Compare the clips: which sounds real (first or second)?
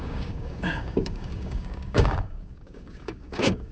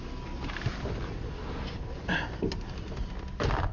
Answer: second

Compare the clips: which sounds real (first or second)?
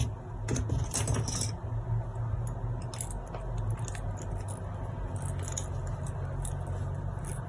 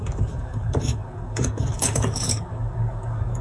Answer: first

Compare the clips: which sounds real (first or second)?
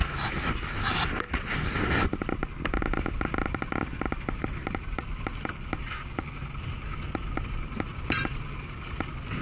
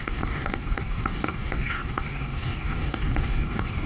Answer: first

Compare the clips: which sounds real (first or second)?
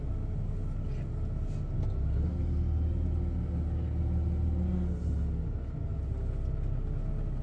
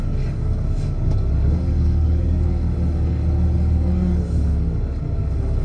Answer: first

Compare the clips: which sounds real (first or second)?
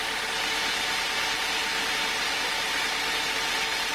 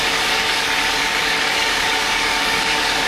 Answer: first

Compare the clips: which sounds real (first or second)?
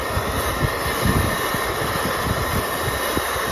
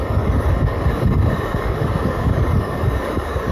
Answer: first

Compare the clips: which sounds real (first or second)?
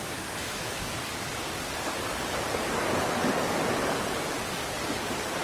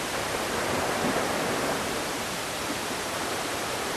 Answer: second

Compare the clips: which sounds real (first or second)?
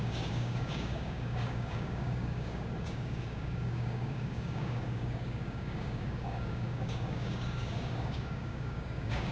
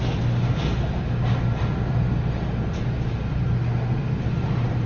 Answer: second